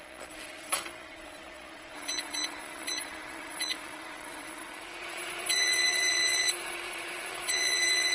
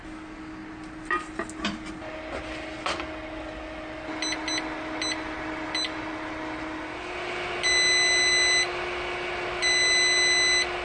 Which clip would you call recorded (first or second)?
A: second